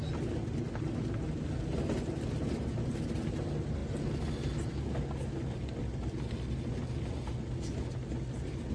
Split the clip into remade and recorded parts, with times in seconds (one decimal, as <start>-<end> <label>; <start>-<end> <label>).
0.0-8.7 recorded